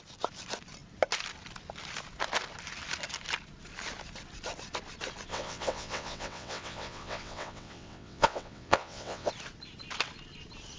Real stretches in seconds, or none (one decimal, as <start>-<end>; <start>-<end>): 0.0-5.3; 9.3-10.8